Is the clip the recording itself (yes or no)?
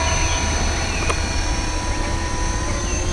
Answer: yes